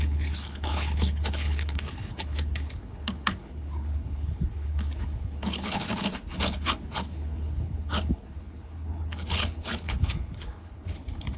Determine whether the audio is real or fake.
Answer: fake